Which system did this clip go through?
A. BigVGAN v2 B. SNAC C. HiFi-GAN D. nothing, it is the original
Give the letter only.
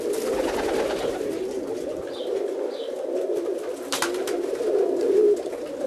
D